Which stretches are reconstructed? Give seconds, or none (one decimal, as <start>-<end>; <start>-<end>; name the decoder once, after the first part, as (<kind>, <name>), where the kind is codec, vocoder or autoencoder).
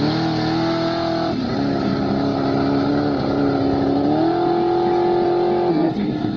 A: 5.7-6.4 (codec, SNAC)